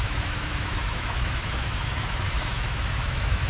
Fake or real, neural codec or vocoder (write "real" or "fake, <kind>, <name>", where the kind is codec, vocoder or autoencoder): fake, autoencoder, DAC-VAE